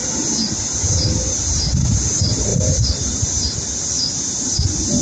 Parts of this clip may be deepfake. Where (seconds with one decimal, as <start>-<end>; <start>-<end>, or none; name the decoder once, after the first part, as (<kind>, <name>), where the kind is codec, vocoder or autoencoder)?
none